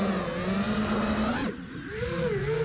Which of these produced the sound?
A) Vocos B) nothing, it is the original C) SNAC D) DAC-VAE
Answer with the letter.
B